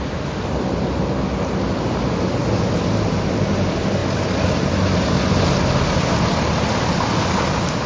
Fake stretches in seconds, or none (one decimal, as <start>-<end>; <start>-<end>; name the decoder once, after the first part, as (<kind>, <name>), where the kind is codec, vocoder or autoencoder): none